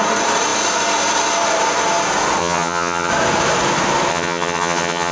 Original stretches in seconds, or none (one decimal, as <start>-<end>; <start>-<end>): 0.0-2.4; 3.1-4.1